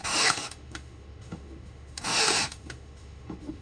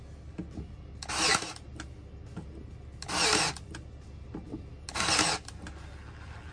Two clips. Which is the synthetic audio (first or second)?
first